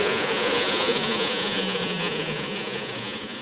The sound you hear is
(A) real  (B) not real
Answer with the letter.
B